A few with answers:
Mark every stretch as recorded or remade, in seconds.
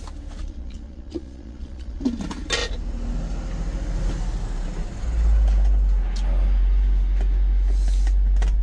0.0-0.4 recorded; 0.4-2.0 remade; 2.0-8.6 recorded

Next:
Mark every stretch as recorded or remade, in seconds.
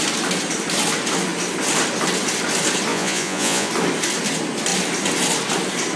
0.0-2.9 recorded; 2.9-3.7 remade; 3.7-6.0 recorded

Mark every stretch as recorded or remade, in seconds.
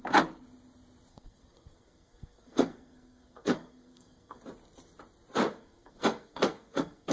0.0-1.1 recorded; 1.1-4.4 remade; 4.4-5.5 recorded; 5.5-7.1 remade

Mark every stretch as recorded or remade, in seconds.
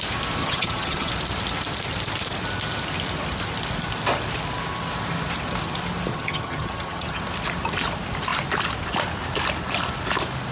0.0-0.4 recorded; 0.4-1.1 remade; 1.1-6.1 recorded; 6.1-7.2 remade; 7.2-10.5 recorded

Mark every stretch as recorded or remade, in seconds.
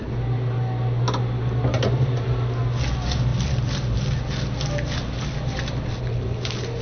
0.0-6.8 recorded